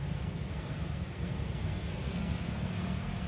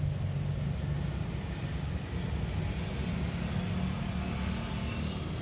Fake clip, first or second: first